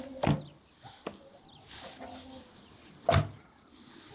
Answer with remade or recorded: recorded